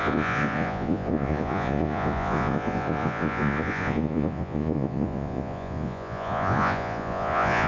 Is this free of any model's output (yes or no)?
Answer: no